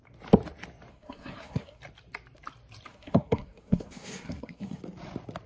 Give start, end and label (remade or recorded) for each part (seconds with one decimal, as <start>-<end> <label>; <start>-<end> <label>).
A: 0.0-0.9 recorded; 0.9-1.8 remade; 1.8-2.9 recorded; 2.9-4.8 remade; 4.8-5.5 recorded